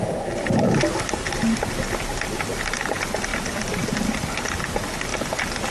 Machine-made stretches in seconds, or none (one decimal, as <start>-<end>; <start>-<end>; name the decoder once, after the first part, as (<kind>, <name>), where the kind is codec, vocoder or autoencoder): none